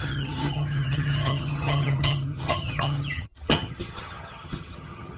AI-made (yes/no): yes